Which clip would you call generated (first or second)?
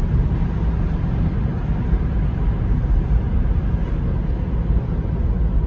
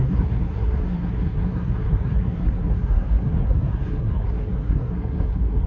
second